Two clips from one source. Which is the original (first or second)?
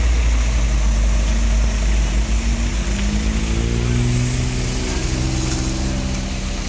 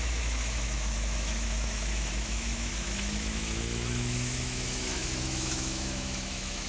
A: first